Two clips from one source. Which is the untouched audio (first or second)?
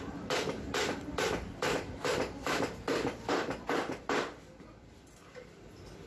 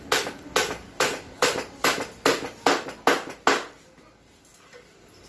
second